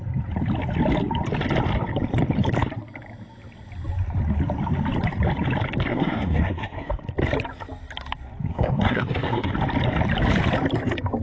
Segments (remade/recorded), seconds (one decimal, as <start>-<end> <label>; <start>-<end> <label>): 0.0-5.9 recorded; 5.9-6.9 remade; 6.9-8.5 recorded; 8.5-9.5 remade; 9.5-11.2 recorded